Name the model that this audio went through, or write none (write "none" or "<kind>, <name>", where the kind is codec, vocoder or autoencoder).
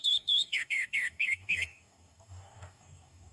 codec, DAC